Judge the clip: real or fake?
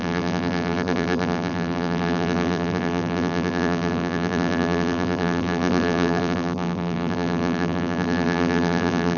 fake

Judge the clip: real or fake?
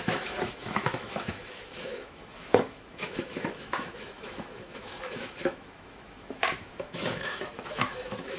fake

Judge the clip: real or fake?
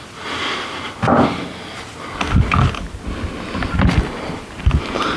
real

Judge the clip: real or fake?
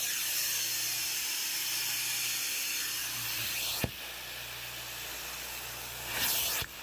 real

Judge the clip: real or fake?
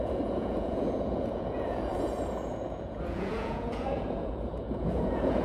fake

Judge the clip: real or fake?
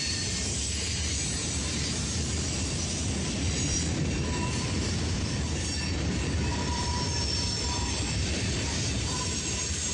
fake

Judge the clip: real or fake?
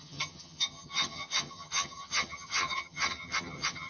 fake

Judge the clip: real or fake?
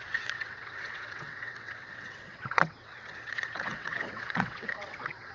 fake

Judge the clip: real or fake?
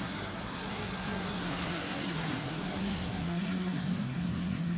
fake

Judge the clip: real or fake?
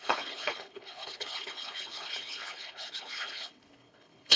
fake